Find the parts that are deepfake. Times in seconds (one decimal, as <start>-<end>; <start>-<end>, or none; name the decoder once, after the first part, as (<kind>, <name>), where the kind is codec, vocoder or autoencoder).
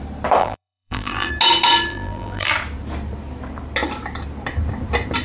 0.4-1.3 (vocoder, BigVGAN v2); 1.9-2.5